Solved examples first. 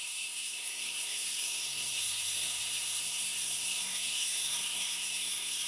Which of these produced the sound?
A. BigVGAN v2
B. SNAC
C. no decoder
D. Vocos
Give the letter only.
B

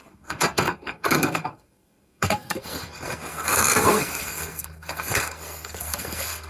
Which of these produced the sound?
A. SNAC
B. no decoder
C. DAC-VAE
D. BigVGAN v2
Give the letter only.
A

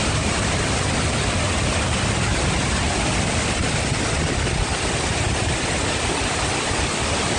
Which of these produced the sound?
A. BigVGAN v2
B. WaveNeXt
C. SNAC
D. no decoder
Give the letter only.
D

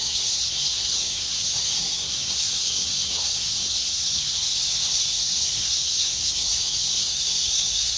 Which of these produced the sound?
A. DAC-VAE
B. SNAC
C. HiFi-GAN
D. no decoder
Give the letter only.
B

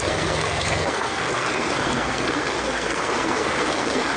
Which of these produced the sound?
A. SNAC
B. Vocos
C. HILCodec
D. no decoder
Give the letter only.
A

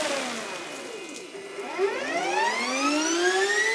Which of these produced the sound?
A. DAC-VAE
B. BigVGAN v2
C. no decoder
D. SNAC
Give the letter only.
C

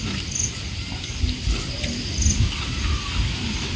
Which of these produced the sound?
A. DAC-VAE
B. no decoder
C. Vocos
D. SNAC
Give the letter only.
B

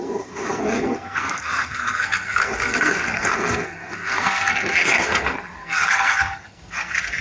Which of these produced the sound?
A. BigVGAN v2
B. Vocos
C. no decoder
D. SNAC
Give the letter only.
D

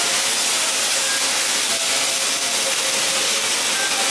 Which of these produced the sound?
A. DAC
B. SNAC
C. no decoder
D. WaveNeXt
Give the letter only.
C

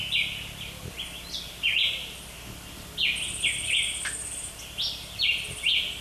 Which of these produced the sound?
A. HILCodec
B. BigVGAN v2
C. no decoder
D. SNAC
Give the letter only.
C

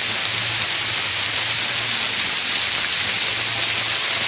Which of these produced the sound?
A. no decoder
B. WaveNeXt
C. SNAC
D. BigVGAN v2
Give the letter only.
A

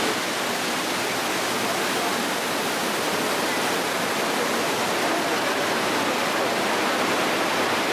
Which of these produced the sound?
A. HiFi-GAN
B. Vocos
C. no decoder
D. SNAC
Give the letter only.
C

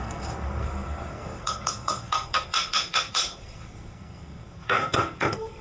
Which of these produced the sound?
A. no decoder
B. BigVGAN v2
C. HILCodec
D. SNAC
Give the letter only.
D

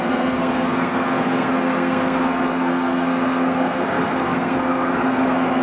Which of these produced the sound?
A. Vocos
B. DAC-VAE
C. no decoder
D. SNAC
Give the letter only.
D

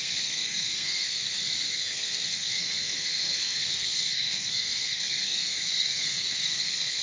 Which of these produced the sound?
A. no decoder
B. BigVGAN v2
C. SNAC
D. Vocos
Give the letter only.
C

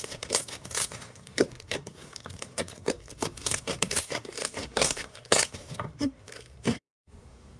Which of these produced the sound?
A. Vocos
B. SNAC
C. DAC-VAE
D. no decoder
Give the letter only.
B